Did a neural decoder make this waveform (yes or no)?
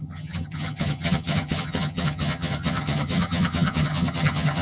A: yes